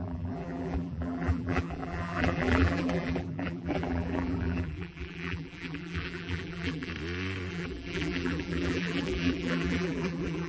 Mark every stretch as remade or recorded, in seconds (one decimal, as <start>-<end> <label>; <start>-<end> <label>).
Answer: 0.0-6.9 remade; 6.9-7.5 recorded; 7.5-10.5 remade